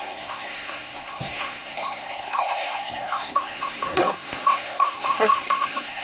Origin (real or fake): fake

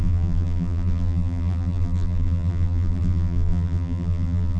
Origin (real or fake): fake